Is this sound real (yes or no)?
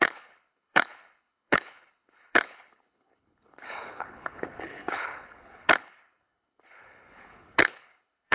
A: no